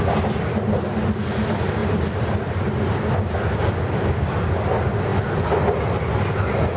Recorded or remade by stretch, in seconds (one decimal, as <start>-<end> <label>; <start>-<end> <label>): 0.0-6.8 recorded